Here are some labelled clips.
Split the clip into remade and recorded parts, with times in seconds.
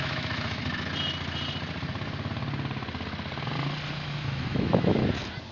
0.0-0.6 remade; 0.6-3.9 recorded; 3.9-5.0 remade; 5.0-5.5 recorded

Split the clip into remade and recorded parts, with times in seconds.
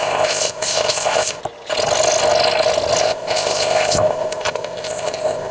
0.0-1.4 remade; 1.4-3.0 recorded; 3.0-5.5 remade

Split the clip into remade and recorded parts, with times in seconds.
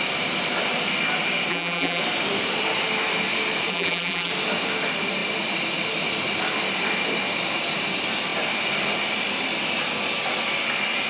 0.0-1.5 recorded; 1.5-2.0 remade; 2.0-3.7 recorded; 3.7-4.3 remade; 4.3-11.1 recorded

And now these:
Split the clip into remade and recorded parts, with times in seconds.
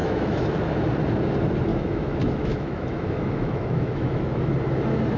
0.0-0.7 remade; 0.7-1.7 recorded; 1.7-4.5 remade; 4.5-5.2 recorded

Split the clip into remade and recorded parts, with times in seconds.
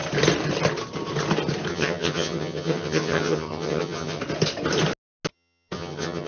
0.0-1.7 recorded; 1.7-4.2 remade; 4.2-5.3 recorded; 5.3-6.3 remade